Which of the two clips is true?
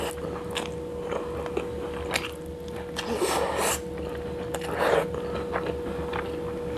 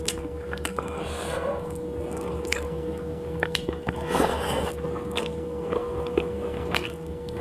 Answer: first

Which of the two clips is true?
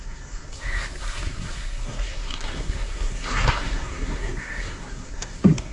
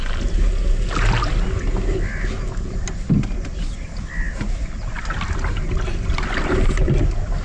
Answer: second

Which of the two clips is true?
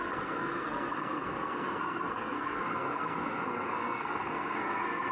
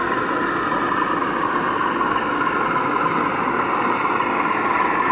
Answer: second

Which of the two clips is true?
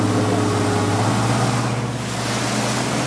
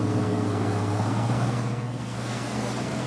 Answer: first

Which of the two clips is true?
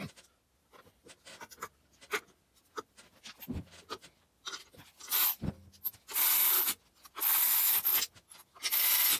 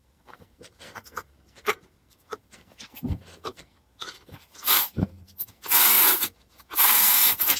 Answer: first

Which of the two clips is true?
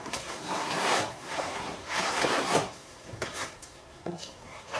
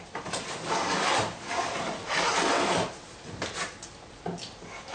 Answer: second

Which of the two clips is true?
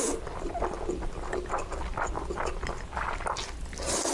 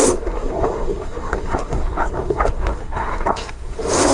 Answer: first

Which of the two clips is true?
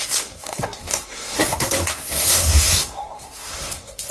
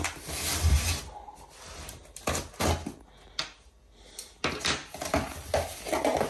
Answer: second